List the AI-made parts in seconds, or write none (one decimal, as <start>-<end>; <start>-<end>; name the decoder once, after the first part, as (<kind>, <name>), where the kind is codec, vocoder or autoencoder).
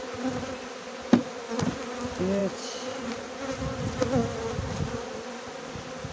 none